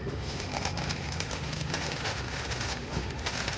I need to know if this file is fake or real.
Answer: fake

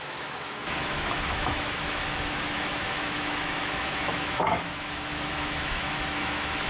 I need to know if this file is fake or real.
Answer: fake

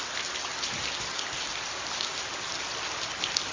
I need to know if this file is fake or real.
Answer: real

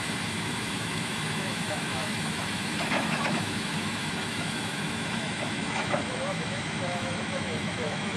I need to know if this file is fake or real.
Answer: fake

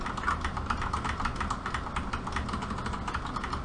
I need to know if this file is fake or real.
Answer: real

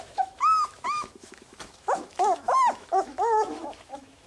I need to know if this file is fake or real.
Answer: fake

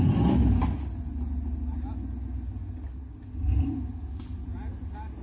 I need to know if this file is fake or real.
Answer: real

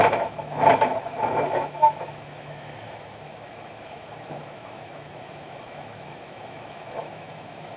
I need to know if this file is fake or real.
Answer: fake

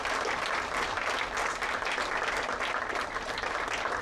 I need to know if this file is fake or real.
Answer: real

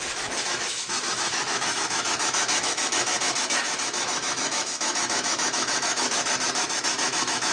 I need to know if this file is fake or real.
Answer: fake